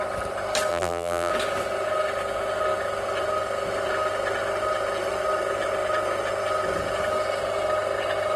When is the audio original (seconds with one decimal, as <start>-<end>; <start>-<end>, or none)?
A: 0.0-0.7; 1.3-8.4